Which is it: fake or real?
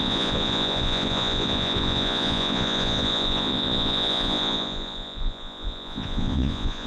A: fake